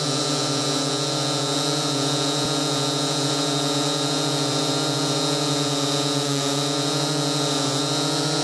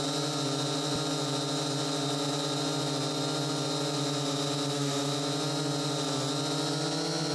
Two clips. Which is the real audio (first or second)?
second